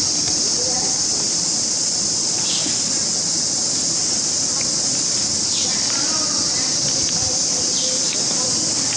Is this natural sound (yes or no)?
yes